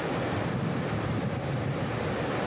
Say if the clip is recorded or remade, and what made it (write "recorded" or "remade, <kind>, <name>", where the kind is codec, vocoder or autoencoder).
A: recorded